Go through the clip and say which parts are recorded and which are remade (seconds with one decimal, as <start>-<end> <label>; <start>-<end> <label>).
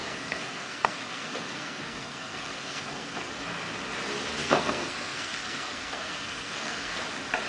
0.0-3.3 remade; 3.3-4.4 recorded; 4.4-7.0 remade; 7.0-7.5 recorded